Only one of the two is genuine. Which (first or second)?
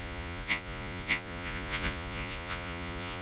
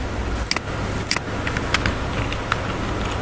second